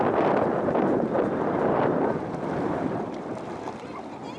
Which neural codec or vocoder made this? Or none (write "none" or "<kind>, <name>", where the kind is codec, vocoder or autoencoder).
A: none